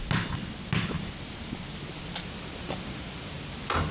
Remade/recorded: recorded